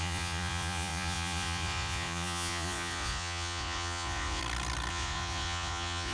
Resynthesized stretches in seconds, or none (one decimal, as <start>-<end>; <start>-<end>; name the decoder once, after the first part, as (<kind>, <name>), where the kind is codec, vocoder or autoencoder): 0.0-4.4 (vocoder, Vocos); 4.9-6.1